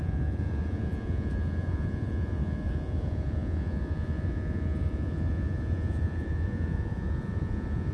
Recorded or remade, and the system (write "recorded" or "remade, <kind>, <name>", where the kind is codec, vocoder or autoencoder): remade, vocoder, Vocos